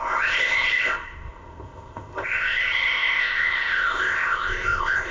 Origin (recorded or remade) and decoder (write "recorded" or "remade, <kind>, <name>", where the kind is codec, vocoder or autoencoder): remade, codec, ZipCodec